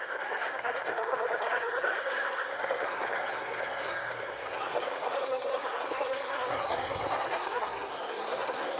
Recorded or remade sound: remade